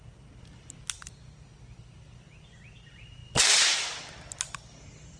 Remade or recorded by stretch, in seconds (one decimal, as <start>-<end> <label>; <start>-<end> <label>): 0.0-5.2 recorded

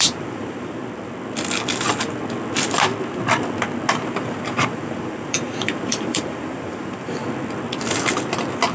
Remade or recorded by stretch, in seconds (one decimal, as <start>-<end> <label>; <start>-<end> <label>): 0.0-0.8 remade; 0.8-3.9 recorded; 3.9-7.2 remade; 7.2-8.7 recorded

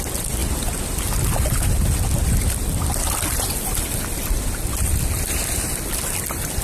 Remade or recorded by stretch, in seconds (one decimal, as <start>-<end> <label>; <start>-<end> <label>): 0.0-6.6 recorded

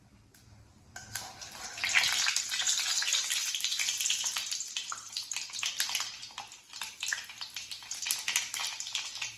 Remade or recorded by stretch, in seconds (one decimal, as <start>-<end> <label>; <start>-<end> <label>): 0.0-9.4 recorded